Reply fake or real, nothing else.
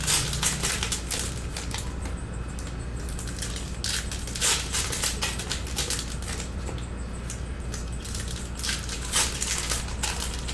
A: real